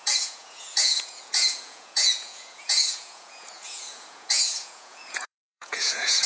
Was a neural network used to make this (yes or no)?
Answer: yes